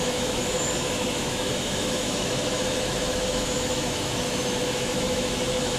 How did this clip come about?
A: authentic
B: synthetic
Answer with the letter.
B